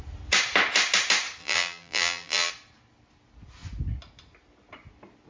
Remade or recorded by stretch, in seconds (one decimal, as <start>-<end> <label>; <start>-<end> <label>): 0.0-1.4 recorded; 1.4-2.5 remade; 2.5-5.3 recorded